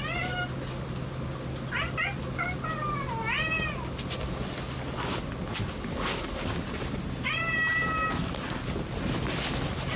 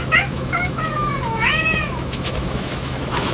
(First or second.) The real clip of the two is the first